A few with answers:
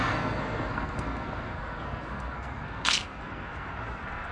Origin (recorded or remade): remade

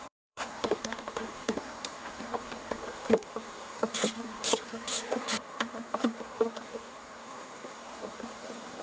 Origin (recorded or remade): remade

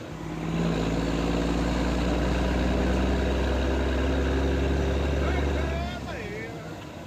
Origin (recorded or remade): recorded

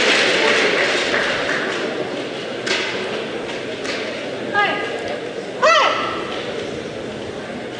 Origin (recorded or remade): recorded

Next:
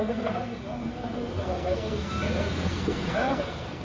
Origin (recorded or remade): remade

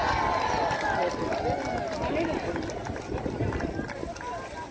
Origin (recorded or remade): recorded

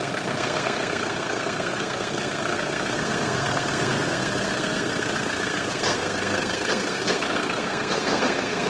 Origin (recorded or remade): remade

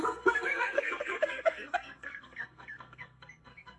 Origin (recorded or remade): remade